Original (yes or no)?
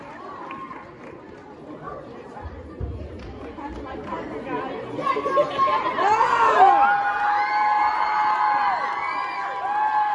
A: yes